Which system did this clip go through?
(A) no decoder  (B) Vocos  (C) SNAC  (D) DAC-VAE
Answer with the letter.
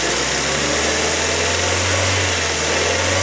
A